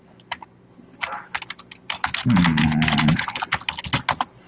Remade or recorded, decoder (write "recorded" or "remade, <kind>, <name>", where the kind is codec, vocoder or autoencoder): recorded